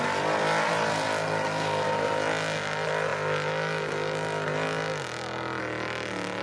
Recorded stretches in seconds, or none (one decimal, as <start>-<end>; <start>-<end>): 0.0-6.4